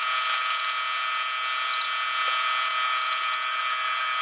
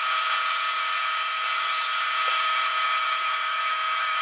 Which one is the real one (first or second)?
first